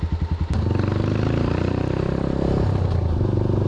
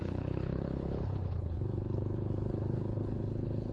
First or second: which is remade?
second